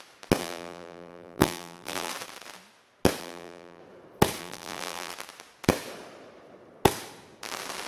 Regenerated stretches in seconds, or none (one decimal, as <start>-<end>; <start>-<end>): 0.4-2.1; 3.2-3.8; 4.4-5.1